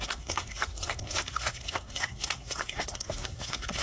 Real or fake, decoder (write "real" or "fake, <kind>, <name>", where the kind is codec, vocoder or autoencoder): fake, codec, SNAC